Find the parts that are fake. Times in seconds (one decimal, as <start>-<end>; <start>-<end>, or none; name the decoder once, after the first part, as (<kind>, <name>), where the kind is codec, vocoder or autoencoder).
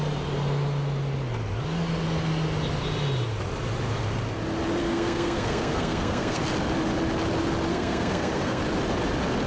4.8-6.4 (codec, SNAC); 7.7-8.6